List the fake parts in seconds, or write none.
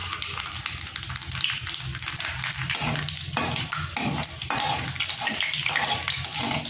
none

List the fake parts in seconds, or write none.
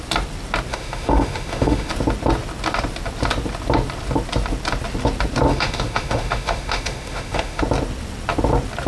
0.7-1.9 (autoencoder, DAC-VAE); 5.5-7.6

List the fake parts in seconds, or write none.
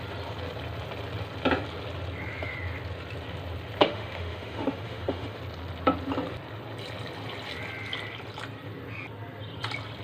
3.8-5.4 (autoencoder, DAC-VAE)